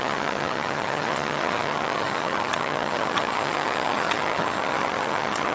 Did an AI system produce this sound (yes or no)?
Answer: yes